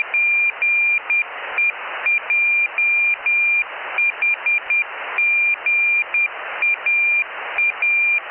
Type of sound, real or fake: real